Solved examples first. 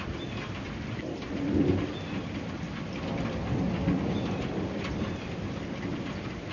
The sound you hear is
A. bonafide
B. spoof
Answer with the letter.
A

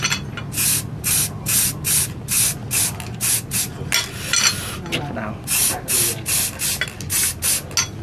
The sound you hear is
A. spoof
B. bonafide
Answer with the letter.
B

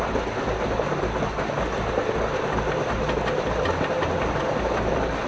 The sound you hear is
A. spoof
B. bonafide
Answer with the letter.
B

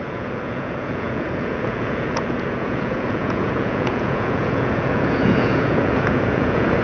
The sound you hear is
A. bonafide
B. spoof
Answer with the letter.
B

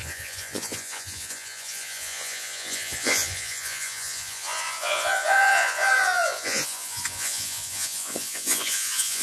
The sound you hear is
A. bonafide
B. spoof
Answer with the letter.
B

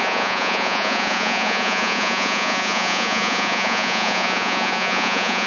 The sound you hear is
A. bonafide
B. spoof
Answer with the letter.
B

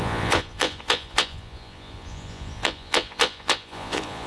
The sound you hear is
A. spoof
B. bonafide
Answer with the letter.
A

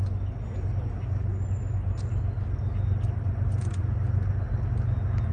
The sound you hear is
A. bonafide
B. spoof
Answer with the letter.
A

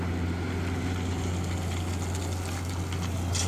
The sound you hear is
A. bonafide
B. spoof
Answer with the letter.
A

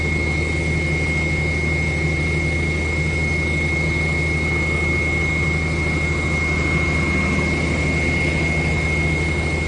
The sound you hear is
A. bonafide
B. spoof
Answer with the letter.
A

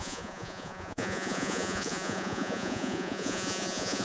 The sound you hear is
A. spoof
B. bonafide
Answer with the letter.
A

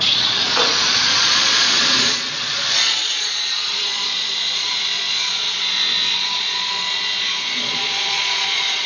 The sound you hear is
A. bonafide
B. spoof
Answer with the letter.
B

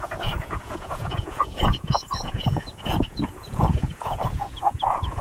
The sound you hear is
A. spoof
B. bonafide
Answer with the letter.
A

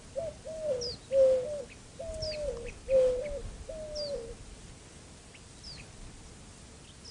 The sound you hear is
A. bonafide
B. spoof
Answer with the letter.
A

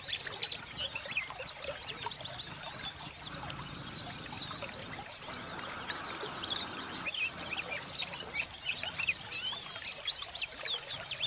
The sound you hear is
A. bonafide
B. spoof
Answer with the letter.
A